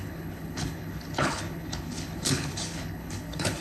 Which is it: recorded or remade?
remade